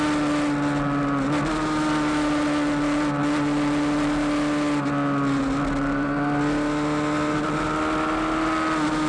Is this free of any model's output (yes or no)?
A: yes